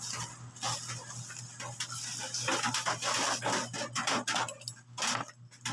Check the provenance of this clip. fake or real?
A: real